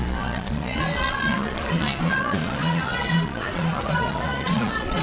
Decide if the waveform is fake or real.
fake